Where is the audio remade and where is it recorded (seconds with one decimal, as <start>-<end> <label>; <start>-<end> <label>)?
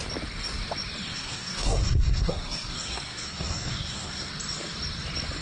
0.0-1.1 recorded; 1.1-4.3 remade; 4.3-5.4 recorded